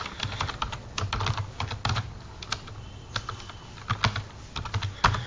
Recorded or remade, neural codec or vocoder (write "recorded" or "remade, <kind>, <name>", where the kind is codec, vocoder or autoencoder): recorded